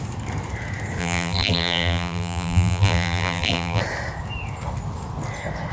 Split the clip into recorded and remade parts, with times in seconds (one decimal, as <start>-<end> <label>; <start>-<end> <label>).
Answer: 0.0-1.0 recorded; 1.0-3.8 remade; 3.8-5.7 recorded